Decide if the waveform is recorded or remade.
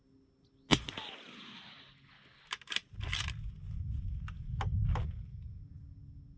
recorded